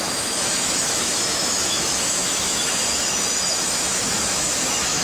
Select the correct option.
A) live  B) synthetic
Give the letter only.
B